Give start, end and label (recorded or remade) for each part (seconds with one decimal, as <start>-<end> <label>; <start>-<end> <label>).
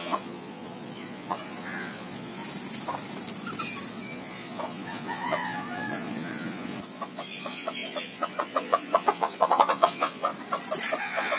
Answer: 0.0-2.4 remade; 2.4-3.9 recorded; 3.9-10.3 remade; 10.3-11.0 recorded; 11.0-11.4 remade